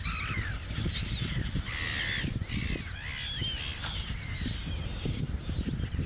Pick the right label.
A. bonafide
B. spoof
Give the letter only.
A